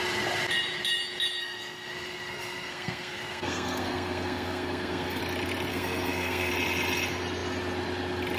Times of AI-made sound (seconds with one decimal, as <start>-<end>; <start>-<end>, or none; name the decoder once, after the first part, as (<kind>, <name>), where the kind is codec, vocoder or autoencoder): 1.4-5.2 (codec, SNAC); 5.7-6.5